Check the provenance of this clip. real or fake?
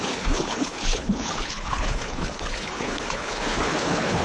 fake